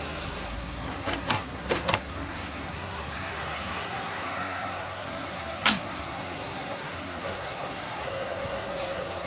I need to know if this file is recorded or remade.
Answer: remade